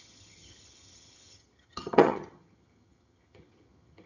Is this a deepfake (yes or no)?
yes